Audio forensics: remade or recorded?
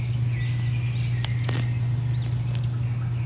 recorded